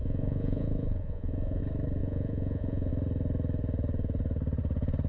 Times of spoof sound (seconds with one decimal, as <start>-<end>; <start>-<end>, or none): 0.0-1.6; 2.0-2.9